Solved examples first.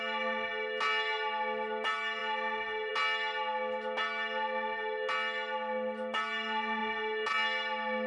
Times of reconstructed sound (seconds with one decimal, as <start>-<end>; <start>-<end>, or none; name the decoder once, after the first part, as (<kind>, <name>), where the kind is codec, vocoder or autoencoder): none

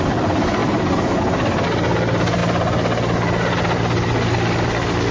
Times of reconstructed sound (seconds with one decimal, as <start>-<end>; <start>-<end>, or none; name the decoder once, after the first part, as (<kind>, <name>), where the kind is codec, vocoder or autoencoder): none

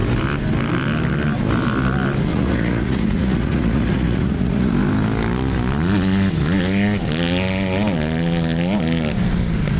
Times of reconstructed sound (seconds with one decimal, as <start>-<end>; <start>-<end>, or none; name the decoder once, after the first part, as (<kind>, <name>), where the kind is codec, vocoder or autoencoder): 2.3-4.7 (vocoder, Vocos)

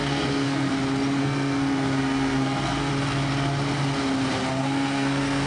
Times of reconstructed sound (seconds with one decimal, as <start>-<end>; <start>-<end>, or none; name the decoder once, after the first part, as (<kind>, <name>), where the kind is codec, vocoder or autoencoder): 0.0-0.7 (codec, SNAC); 1.2-2.9; 4.6-5.5

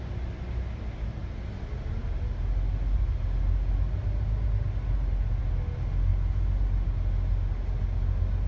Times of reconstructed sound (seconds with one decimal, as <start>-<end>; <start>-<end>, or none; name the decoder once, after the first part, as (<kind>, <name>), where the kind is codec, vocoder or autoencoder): none

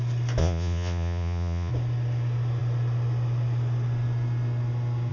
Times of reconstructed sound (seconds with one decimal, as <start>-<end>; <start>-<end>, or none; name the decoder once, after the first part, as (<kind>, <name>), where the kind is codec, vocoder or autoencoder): 0.4-1.7 (vocoder, Vocos)

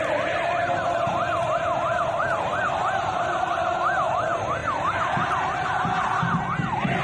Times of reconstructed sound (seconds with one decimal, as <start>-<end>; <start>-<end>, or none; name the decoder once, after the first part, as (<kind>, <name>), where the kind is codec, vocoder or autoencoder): none